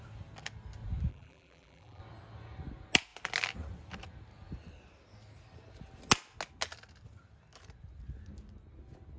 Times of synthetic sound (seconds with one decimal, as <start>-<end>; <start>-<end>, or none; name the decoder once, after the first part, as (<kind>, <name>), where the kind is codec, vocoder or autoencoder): 1.1-2.0 (vocoder, BigVGAN v2)